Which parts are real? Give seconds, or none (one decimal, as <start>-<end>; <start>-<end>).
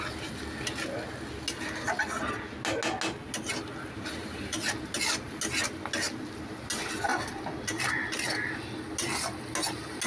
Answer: 0.0-4.2; 4.7-10.1